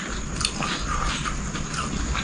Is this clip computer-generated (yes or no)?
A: no